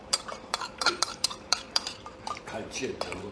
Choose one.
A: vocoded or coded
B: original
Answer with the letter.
A